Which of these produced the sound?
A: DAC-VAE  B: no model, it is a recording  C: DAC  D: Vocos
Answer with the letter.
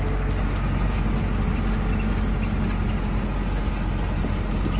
B